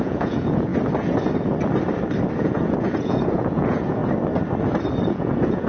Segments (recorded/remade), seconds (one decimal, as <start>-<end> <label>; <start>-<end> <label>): 0.0-0.7 remade; 0.7-2.4 recorded; 2.4-4.0 remade; 4.0-5.1 recorded; 5.1-5.7 remade